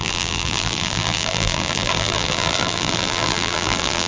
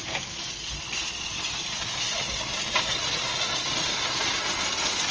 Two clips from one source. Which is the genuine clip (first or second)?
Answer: second